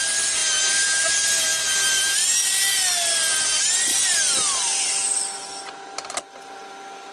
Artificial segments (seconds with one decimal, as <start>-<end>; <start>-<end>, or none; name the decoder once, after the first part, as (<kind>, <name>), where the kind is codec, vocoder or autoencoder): none